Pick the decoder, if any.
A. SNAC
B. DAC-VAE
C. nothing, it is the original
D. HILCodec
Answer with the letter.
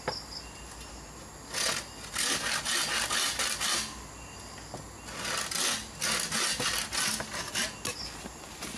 C